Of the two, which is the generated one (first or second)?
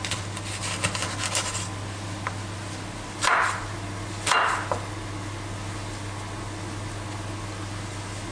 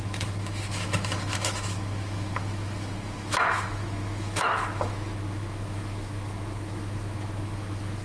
second